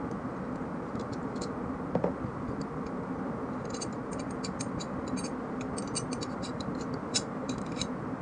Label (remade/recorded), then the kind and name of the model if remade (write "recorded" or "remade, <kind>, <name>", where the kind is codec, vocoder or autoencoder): recorded